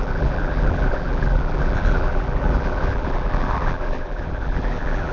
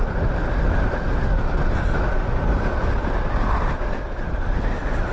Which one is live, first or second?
second